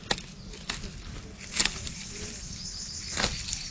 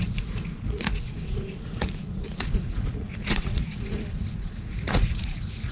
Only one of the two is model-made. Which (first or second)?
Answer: second